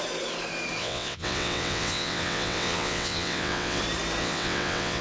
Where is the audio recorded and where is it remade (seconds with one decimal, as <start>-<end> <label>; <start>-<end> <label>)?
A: 0.0-0.8 recorded; 0.8-3.8 remade; 3.8-4.2 recorded; 4.2-5.0 remade